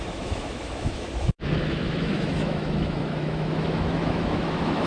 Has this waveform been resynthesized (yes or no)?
yes